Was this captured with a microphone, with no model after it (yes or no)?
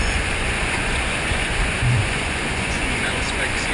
no